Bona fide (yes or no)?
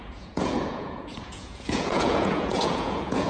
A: no